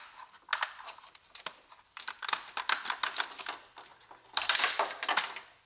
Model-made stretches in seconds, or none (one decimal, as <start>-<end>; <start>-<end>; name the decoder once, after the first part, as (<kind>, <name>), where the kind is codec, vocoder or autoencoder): none